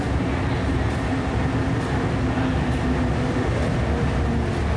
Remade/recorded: recorded